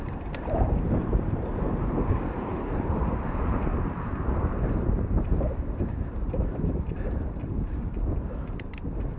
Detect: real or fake fake